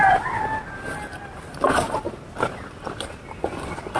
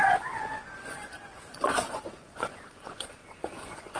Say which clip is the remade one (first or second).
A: second